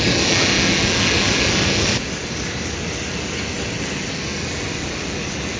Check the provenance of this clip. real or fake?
real